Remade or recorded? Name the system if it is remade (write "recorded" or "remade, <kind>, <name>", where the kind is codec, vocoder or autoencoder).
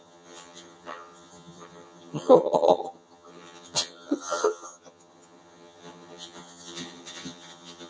remade, vocoder, HiFi-GAN